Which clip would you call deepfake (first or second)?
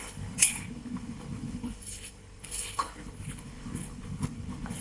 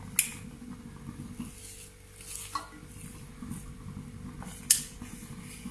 first